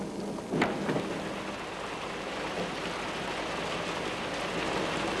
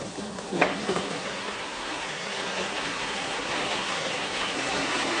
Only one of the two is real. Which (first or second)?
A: first